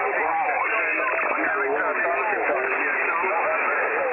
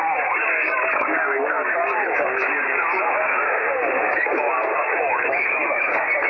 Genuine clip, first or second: first